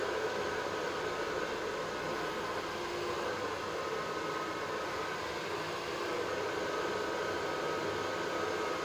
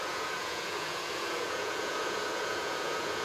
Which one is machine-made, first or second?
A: second